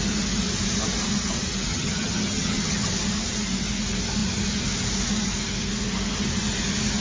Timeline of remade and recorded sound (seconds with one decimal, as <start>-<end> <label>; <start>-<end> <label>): 0.0-1.7 recorded; 1.7-2.9 remade; 2.9-7.0 recorded